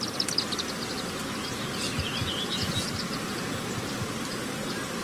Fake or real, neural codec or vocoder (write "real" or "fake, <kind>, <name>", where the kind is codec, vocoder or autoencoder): real